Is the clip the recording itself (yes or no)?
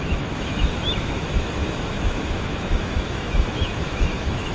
no